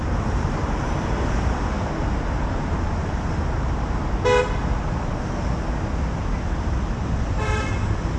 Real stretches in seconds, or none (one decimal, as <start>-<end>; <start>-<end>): 4.0-8.2